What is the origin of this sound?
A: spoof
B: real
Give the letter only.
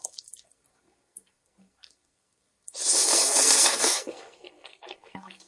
A